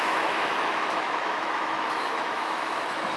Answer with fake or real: fake